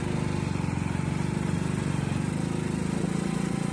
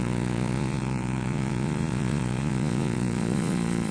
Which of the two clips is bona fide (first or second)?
first